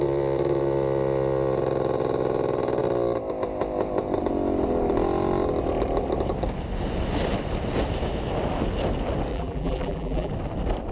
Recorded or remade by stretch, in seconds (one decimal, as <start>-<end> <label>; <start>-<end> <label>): 0.0-9.3 recorded; 9.3-10.3 remade; 10.3-10.9 recorded